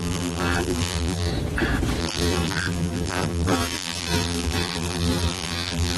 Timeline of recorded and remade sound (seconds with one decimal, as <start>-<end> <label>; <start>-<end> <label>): 0.0-1.3 remade; 1.3-2.0 recorded; 2.0-6.0 remade